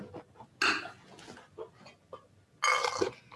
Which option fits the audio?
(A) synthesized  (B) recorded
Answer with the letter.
B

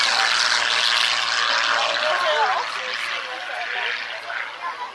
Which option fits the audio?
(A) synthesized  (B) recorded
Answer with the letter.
B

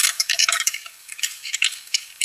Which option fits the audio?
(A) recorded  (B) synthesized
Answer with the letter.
B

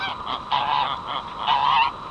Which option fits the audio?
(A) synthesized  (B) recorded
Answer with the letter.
B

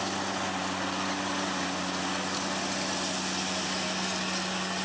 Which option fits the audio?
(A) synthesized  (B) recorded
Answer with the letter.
B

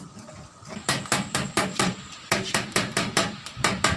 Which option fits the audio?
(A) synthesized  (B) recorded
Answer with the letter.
A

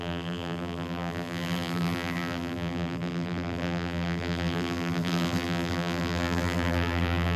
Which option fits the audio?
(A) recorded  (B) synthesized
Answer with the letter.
B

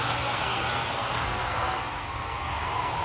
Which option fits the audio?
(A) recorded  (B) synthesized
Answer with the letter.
B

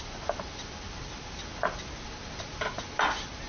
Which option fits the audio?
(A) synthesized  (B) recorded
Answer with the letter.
B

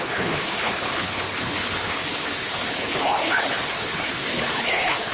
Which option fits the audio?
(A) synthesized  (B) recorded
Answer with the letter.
A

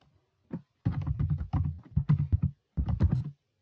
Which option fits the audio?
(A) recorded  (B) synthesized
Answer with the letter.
A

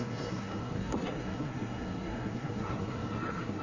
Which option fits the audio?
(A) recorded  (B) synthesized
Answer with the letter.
B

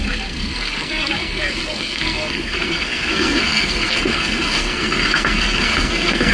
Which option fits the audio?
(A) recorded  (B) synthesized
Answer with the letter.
B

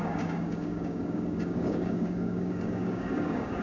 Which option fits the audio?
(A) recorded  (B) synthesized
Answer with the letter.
B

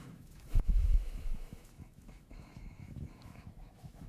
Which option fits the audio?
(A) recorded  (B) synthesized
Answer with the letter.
B